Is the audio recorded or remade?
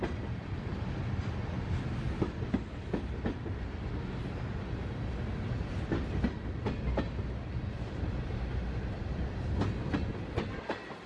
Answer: recorded